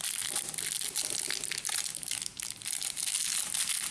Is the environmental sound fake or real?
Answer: real